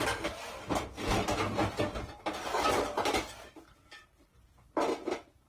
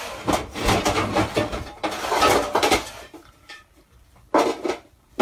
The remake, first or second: second